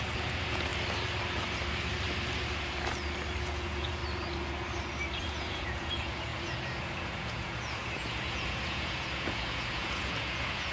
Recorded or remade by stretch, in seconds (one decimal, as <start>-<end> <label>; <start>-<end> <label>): 0.0-0.7 remade; 0.7-3.4 recorded; 3.4-4.0 remade; 4.0-5.2 recorded; 5.2-10.7 remade